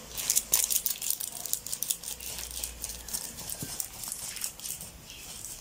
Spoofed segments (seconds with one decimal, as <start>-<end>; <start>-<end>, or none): 2.9-4.9